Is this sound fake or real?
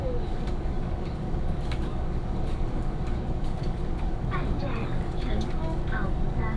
fake